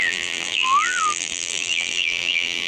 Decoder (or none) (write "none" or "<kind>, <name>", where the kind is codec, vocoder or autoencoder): vocoder, BigVGAN v2